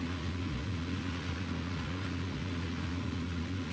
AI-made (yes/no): yes